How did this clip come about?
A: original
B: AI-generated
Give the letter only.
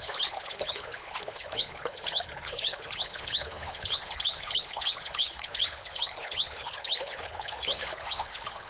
B